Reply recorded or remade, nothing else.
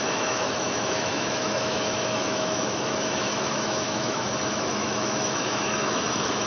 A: remade